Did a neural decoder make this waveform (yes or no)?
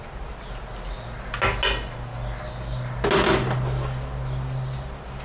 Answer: no